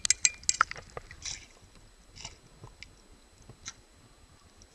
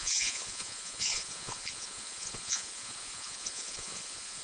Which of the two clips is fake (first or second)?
second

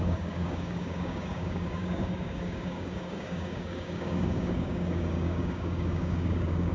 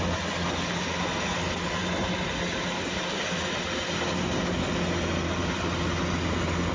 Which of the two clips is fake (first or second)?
first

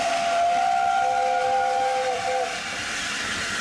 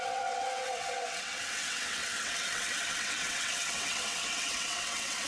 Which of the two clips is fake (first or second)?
second